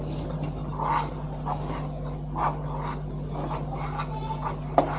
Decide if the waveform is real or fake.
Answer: real